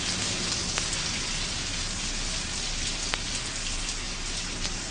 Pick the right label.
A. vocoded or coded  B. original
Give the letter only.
B